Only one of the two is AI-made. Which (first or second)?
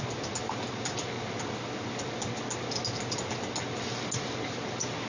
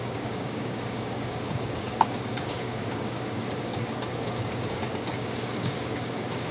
second